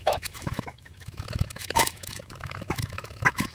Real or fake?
fake